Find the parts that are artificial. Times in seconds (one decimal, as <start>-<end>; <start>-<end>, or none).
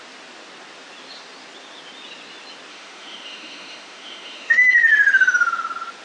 2.7-4.7